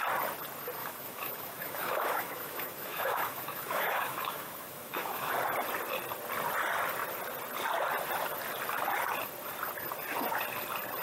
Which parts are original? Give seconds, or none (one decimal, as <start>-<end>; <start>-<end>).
0.0-0.8; 5.3-11.0